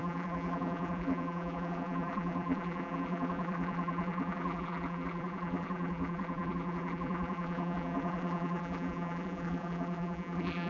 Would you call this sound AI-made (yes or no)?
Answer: yes